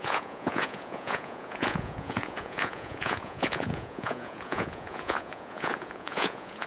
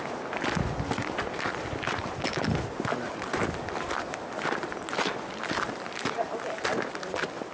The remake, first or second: first